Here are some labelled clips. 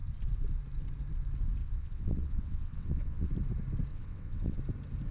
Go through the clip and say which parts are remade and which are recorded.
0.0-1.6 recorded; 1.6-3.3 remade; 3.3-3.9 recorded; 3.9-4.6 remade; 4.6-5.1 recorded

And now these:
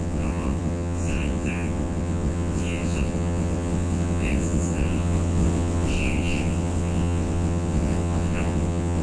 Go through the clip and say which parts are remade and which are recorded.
0.0-9.0 remade